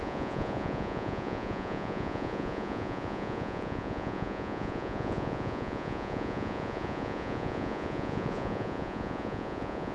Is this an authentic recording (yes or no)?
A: no